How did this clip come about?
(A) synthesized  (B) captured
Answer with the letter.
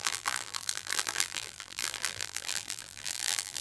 A